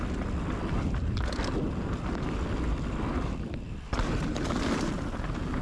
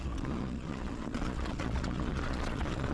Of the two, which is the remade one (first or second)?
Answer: second